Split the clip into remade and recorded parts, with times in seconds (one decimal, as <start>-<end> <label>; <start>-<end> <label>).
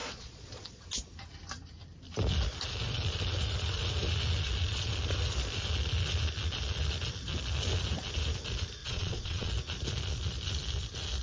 0.0-0.8 remade; 0.8-8.8 recorded; 8.8-9.5 remade; 9.5-11.2 recorded